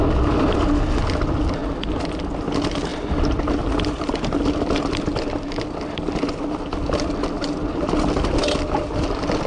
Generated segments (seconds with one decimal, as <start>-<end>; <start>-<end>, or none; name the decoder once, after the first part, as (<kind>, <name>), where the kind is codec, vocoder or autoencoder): none